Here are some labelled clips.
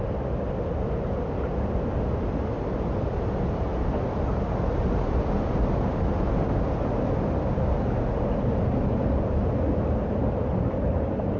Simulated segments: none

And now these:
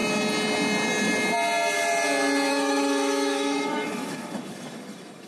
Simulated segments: 2.5-5.3 (autoencoder, DAC-VAE)

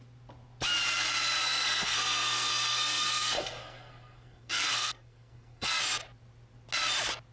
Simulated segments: 1.4-5.8 (codec, SNAC)

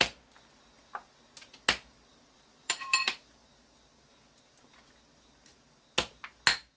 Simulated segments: 2.1-3.4 (vocoder, BigVGAN v2)

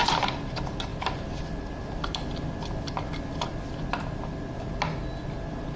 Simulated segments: none

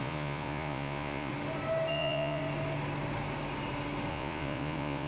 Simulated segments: 0.0-1.3 (vocoder, Vocos); 1.9-2.4; 4.1-5.1

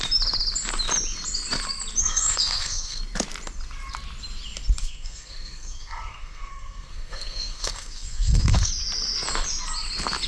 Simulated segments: 2.0-3.0 (codec, SNAC); 4.8-8.7

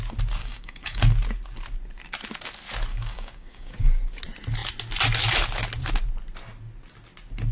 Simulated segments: 0.4-1.0 (codec, DAC); 2.9-4.0